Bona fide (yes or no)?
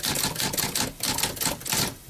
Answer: yes